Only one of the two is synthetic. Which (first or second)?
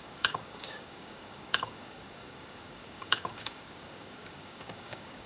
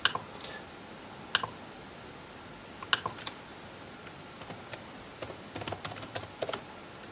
first